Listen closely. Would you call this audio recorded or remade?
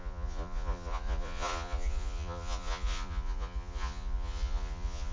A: remade